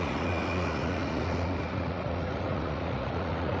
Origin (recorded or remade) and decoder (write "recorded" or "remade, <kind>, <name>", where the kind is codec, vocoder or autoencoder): remade, vocoder, Vocos